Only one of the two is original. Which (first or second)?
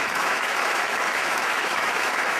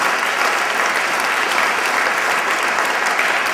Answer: second